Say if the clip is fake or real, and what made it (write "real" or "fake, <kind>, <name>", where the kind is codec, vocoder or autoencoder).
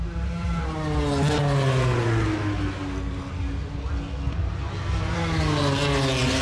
real